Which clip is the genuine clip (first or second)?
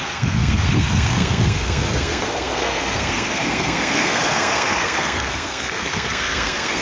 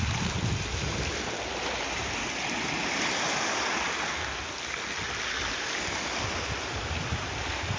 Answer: second